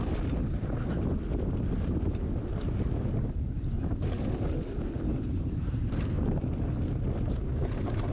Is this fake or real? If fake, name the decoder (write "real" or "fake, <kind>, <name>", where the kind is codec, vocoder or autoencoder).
real